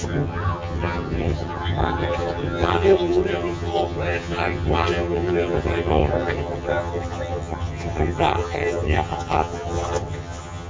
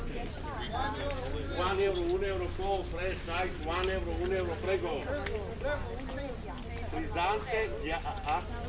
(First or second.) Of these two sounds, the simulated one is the first